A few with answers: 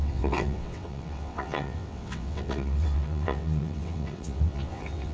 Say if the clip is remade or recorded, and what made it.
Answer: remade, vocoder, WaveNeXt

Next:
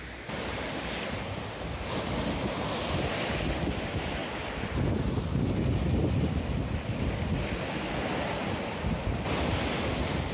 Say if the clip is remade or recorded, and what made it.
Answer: recorded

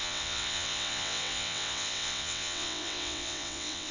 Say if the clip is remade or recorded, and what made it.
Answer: remade, vocoder, WaveNeXt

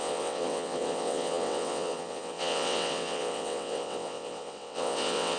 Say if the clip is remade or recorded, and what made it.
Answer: remade, vocoder, WaveNeXt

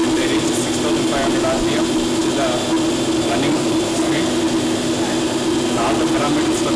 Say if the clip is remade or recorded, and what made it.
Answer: recorded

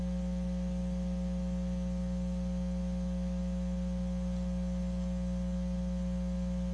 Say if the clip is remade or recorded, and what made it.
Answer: recorded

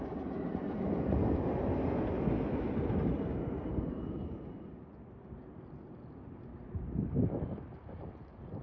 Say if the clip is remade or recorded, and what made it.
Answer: recorded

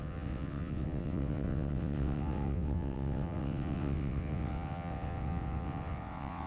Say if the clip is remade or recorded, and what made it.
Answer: remade, vocoder, WaveNeXt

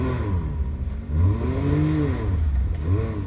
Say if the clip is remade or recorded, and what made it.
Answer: recorded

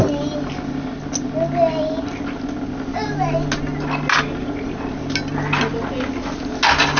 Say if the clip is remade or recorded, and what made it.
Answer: recorded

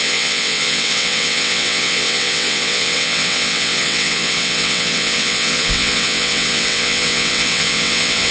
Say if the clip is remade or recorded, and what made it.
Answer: remade, vocoder, WaveNeXt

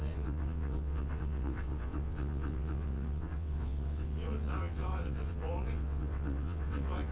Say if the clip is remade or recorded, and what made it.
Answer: remade, vocoder, WaveNeXt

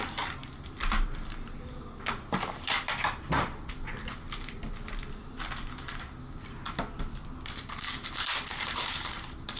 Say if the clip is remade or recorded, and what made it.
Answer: recorded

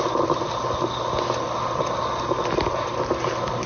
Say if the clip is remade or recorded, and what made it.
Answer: recorded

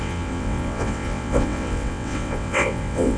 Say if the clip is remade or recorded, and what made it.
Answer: remade, vocoder, WaveNeXt